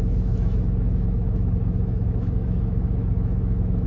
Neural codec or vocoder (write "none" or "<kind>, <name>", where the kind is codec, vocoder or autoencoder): autoencoder, DAC-VAE